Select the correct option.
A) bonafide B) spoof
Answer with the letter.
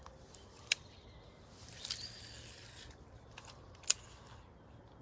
A